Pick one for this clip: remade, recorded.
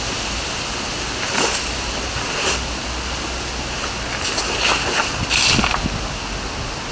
recorded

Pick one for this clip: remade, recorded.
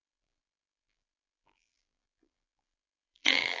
remade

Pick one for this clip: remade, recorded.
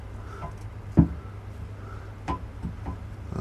recorded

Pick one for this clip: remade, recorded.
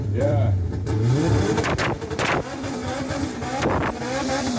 remade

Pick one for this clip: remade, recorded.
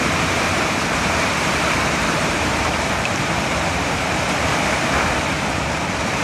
remade